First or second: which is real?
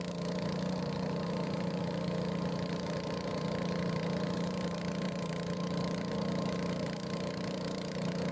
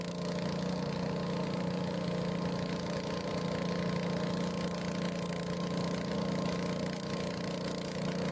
second